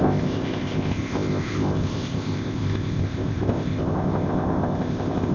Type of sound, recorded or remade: remade